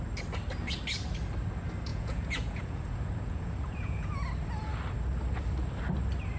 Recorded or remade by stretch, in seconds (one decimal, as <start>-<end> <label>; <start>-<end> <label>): 0.0-1.9 recorded; 1.9-4.1 remade; 4.1-6.4 recorded